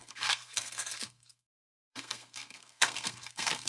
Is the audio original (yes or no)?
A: no